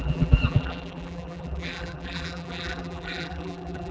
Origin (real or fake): fake